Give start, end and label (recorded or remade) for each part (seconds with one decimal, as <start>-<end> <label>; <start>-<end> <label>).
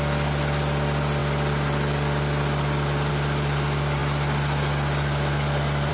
0.0-5.9 recorded